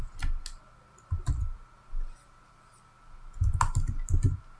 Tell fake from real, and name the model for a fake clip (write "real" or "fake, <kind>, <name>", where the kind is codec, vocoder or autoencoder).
real